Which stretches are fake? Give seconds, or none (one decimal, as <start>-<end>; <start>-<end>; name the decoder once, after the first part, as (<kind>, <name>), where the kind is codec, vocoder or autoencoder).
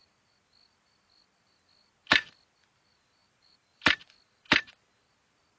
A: 3.2-4.0 (vocoder, BigVGAN v2)